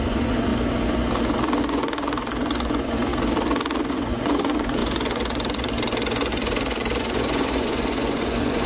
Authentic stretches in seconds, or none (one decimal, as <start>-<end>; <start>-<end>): 0.5-1.6; 3.1-3.9